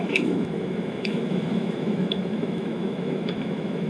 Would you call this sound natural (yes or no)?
no